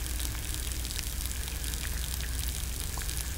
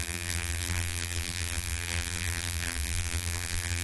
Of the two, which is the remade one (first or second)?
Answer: second